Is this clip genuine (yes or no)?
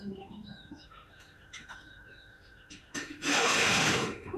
no